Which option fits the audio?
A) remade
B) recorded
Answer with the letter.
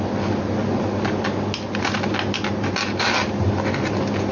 B